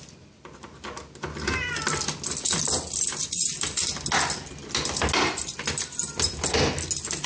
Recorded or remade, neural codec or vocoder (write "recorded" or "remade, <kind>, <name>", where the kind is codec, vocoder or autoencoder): recorded